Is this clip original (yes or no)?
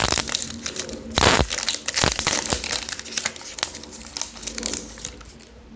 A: yes